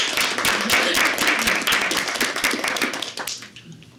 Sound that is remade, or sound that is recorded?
recorded